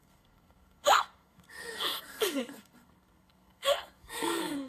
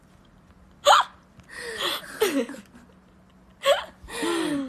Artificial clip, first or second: first